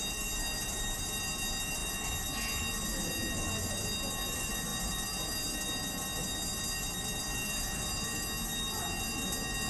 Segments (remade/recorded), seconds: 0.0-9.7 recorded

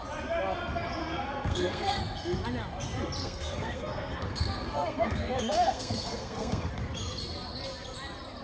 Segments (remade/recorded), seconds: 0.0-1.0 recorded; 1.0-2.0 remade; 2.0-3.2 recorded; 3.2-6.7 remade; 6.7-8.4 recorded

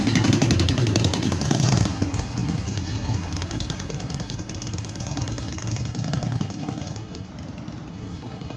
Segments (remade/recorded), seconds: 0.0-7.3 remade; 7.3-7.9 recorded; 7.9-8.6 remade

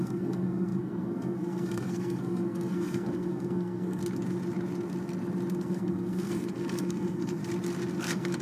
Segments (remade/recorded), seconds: 0.0-4.0 remade; 4.0-5.5 recorded; 5.5-7.4 remade; 7.4-8.0 recorded; 8.0-8.4 remade

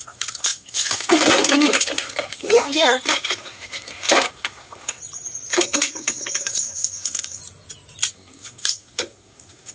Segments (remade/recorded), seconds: 0.0-5.0 remade; 5.0-5.5 recorded; 5.5-7.4 remade; 7.4-8.1 recorded; 8.1-9.7 remade

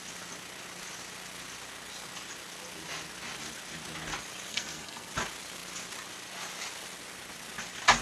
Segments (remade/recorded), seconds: 0.0-4.5 recorded; 4.5-5.1 remade; 5.1-8.0 recorded